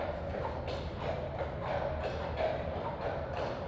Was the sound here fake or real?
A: real